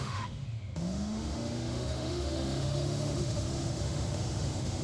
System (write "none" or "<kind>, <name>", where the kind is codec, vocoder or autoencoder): autoencoder, DAC-VAE